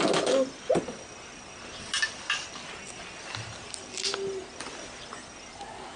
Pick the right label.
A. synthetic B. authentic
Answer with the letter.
B